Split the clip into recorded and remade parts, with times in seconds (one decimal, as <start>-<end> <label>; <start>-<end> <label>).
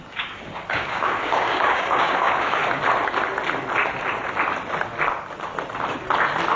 0.0-2.6 remade; 2.6-6.6 recorded